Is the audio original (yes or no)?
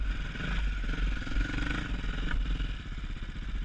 yes